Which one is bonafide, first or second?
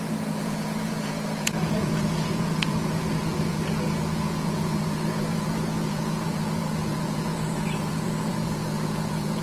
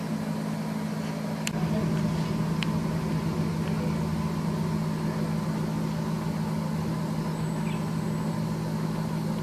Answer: second